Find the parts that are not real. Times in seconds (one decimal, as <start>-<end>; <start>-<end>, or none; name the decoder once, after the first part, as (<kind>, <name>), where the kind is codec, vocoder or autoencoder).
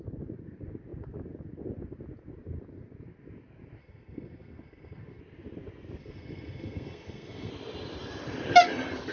3.8-5.2 (codec, SNAC); 6.0-7.5